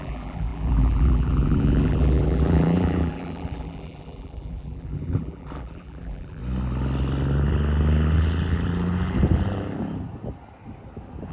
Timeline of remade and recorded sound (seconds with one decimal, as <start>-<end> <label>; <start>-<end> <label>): 0.0-6.4 remade; 6.4-11.3 recorded